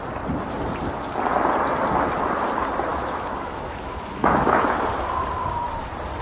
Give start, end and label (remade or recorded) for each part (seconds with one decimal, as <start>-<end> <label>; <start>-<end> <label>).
0.0-2.9 recorded; 2.9-4.8 remade; 4.8-6.2 recorded